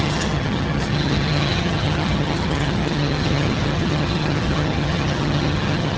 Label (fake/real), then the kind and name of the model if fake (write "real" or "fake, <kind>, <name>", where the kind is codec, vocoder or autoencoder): fake, vocoder, HiFi-GAN